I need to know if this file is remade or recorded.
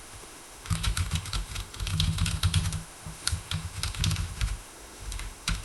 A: remade